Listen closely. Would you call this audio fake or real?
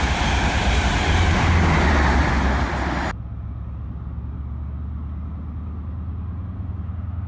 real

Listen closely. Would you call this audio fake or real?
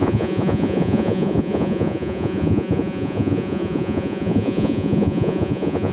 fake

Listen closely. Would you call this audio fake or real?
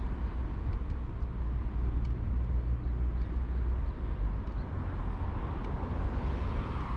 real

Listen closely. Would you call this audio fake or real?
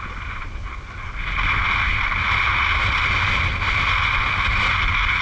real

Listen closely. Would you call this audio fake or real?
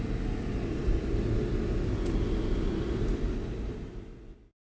real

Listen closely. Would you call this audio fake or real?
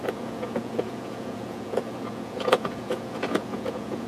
fake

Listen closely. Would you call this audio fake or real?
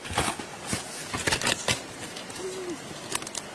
real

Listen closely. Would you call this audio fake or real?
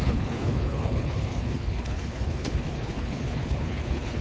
fake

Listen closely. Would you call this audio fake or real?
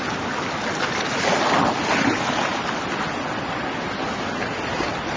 real